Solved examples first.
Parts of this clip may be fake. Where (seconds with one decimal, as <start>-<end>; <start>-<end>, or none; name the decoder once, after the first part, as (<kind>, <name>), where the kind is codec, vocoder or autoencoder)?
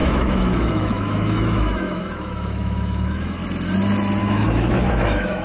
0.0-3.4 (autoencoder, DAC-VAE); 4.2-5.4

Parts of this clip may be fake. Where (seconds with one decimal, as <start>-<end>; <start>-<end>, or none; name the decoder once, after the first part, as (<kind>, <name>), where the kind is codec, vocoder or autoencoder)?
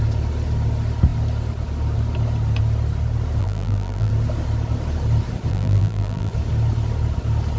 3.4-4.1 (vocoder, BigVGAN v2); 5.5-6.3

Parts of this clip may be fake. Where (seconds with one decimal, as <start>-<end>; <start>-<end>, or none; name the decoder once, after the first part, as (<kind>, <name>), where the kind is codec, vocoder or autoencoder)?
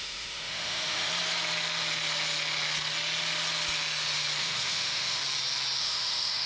0.0-1.1 (autoencoder, DAC-VAE); 4.4-5.2; 5.8-6.5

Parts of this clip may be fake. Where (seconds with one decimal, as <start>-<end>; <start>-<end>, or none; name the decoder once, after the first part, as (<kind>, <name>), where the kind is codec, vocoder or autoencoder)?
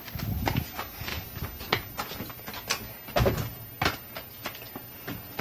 none